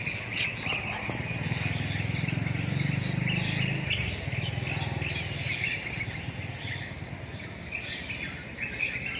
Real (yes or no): yes